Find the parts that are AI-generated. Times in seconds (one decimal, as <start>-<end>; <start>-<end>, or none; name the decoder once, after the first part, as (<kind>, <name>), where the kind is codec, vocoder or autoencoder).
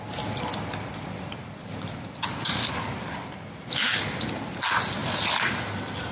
1.6-2.6 (vocoder, BigVGAN v2)